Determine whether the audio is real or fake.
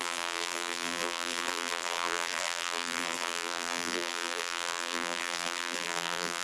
fake